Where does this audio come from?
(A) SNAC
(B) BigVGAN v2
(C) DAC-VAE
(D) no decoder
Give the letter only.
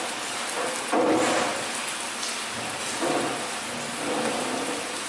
D